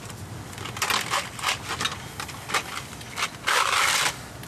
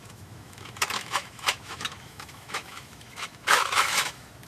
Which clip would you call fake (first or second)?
second